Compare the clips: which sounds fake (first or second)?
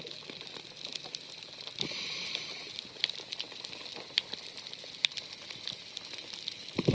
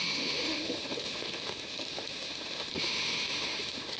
second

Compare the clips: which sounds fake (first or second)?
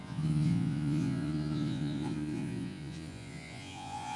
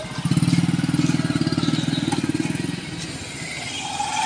first